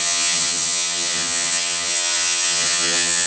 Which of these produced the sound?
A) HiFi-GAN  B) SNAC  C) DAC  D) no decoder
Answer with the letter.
A